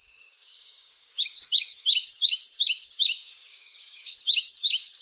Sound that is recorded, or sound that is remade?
remade